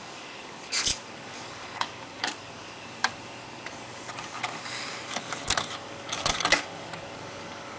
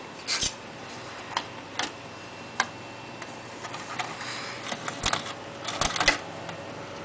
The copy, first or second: first